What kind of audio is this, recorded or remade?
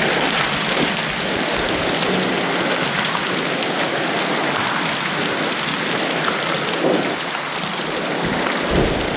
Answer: recorded